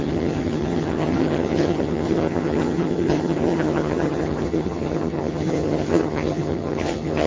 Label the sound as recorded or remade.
remade